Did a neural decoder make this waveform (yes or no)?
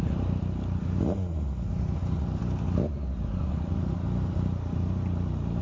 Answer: no